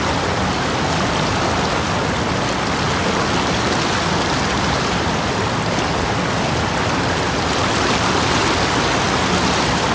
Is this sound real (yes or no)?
yes